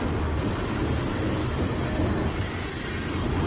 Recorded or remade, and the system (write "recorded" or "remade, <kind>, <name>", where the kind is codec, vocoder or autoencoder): recorded